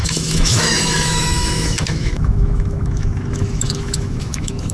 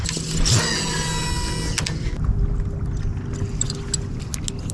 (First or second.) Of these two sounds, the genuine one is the second